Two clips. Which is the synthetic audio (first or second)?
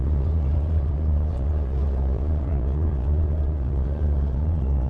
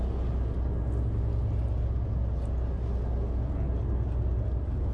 first